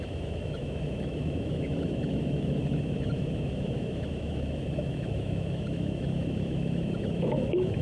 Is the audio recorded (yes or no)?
no